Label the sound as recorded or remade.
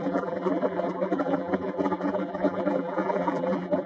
remade